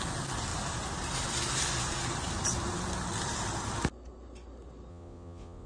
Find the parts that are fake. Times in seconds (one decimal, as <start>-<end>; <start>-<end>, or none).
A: 4.9-5.7